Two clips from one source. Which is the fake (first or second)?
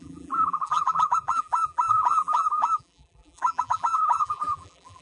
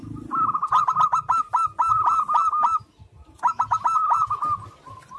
first